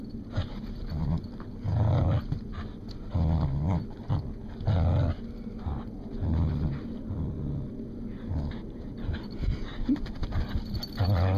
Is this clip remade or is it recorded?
recorded